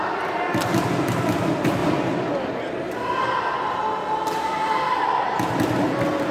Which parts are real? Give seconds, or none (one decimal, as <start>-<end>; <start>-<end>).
0.0-6.3